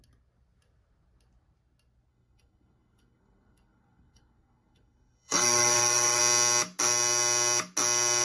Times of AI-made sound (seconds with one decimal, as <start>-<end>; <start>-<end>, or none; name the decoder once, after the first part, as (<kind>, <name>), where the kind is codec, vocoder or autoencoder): 2.1-6.2 (codec, SNAC)

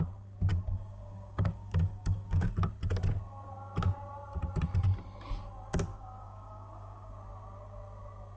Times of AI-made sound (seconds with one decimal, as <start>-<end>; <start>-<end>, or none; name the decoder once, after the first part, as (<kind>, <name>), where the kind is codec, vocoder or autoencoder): 0.5-2.5 (codec, DAC); 5.9-7.1

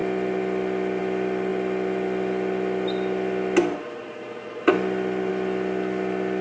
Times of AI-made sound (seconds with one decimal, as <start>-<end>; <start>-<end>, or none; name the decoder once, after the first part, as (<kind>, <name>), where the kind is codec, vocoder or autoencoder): none

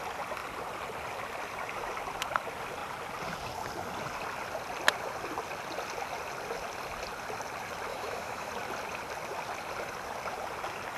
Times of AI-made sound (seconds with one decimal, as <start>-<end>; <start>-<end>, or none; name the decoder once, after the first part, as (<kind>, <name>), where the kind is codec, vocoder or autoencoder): 7.9-8.5 (autoencoder, DAC-VAE)